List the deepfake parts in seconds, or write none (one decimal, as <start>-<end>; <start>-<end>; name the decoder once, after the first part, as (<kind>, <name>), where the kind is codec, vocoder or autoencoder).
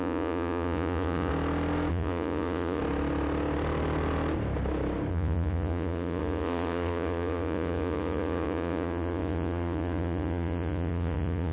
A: 0.0-1.3 (vocoder, Vocos); 1.9-2.8; 5.1-11.5